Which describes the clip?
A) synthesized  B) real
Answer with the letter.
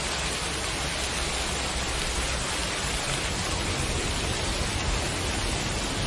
B